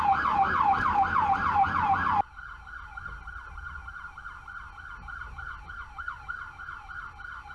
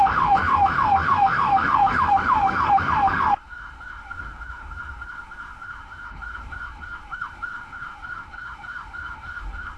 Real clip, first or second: first